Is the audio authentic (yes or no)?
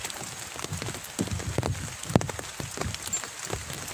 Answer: yes